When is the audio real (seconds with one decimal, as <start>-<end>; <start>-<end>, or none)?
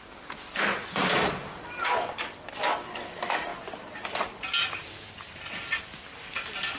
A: 3.5-5.8